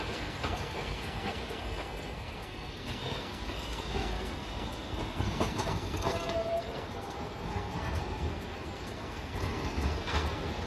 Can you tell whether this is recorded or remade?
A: remade